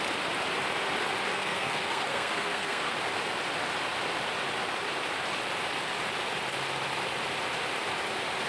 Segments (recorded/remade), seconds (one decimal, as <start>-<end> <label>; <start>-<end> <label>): 0.0-1.3 recorded; 1.3-2.9 remade; 2.9-8.5 recorded